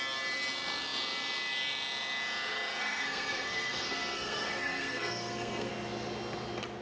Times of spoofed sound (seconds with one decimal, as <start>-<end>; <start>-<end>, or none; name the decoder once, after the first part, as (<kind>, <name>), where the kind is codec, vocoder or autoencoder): 2.8-5.7 (codec, SNAC)